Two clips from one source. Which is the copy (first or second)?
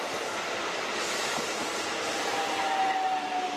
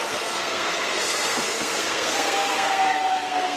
second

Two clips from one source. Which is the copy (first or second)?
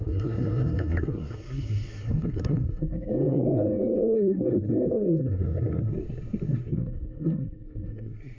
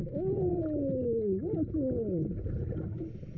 first